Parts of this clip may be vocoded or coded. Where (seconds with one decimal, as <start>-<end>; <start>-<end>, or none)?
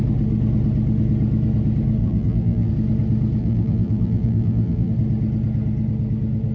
2.0-2.7; 3.4-4.9